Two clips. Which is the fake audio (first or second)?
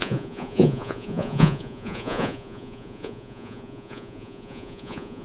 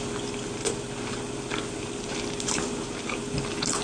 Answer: first